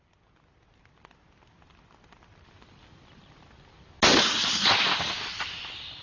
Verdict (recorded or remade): recorded